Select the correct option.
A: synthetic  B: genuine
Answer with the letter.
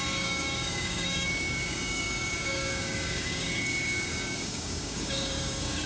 A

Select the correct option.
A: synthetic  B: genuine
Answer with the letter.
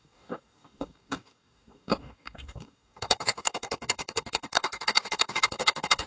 A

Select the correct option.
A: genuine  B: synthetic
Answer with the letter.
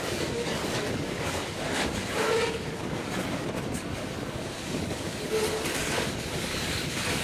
B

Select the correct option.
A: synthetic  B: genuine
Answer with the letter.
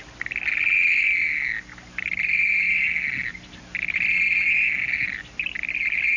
B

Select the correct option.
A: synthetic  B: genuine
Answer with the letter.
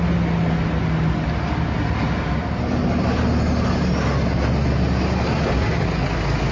B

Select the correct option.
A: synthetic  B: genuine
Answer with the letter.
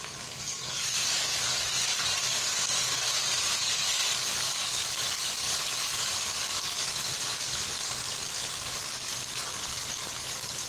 A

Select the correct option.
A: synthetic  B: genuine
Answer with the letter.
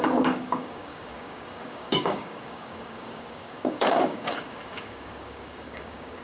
A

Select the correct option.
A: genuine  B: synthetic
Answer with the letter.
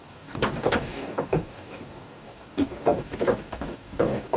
B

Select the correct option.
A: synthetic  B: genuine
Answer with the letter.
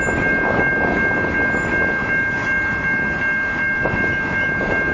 B